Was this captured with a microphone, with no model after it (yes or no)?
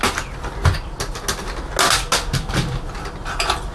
yes